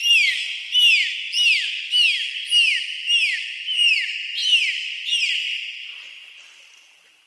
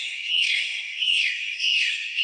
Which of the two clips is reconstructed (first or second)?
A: second